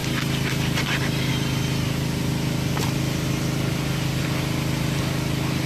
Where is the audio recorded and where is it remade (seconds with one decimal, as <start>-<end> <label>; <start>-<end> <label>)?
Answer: 0.0-5.7 recorded